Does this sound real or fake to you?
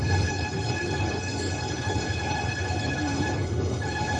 fake